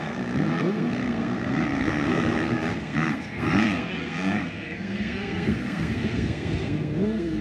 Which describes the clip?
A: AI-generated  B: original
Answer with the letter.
A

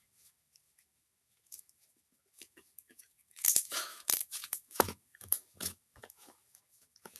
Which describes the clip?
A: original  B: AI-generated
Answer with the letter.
B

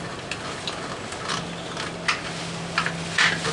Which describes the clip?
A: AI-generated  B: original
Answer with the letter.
B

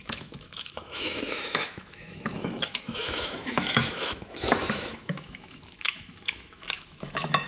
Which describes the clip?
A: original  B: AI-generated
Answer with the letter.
B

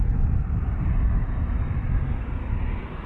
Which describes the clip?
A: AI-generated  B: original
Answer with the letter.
B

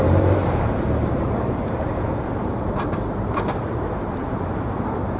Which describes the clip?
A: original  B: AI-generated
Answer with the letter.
B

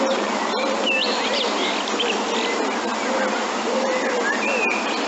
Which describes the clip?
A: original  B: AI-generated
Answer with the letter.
A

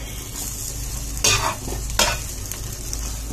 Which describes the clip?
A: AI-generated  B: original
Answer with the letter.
B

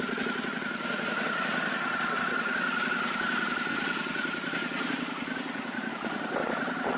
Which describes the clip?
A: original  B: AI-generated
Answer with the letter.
A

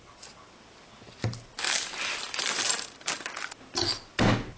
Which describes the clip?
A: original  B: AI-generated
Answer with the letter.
A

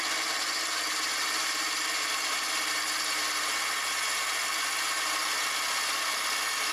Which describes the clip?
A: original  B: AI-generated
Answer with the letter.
A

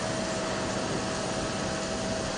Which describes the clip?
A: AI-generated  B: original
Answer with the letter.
B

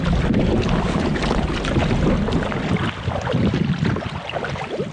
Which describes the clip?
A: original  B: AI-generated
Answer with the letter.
A